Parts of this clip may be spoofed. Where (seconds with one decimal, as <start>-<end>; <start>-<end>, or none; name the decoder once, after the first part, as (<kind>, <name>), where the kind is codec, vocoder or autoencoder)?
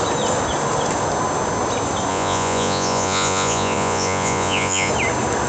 2.1-4.9 (vocoder, Vocos)